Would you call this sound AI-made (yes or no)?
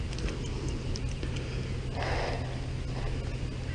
no